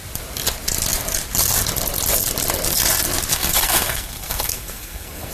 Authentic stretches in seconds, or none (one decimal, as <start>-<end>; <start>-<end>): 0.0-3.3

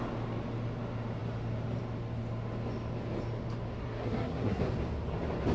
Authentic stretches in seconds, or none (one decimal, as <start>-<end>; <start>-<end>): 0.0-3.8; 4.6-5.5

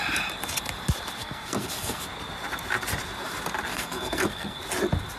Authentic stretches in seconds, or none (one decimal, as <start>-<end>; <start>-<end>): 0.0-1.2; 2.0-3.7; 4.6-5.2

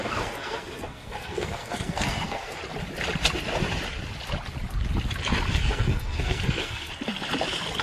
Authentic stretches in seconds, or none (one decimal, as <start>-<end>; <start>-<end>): 2.6-5.5; 6.9-7.8

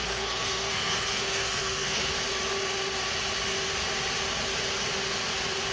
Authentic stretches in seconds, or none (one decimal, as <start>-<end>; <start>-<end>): 2.1-5.7